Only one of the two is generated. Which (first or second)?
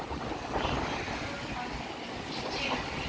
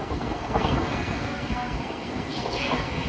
second